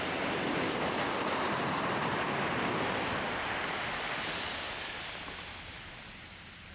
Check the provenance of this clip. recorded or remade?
recorded